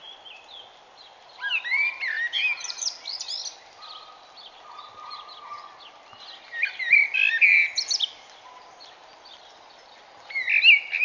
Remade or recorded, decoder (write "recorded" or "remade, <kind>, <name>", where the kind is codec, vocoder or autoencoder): recorded